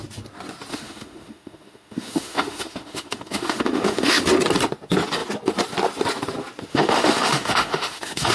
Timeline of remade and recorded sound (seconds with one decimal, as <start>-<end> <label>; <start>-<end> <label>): 0.0-0.7 recorded; 0.7-4.2 remade; 4.2-6.7 recorded; 6.7-8.3 remade